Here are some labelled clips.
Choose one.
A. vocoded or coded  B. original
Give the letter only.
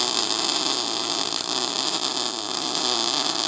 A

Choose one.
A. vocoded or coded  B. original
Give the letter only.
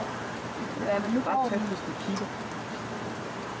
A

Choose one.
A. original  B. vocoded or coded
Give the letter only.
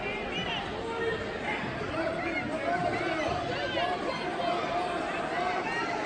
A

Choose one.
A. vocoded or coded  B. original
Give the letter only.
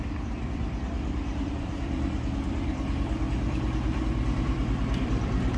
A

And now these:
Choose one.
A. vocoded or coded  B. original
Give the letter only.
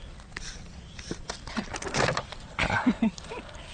A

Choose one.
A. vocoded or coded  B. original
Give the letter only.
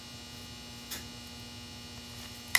B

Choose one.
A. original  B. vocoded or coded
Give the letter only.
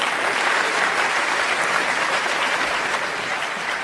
B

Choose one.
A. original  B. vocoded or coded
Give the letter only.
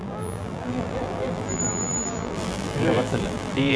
B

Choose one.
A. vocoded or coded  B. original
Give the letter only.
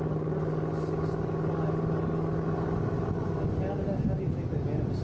B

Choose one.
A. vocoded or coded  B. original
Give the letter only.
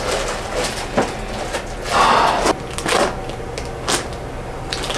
B